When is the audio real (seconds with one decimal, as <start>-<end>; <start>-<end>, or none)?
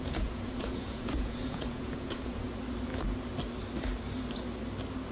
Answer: 2.5-5.1